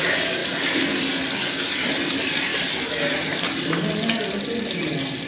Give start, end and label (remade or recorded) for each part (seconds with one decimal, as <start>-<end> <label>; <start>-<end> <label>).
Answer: 0.0-5.3 recorded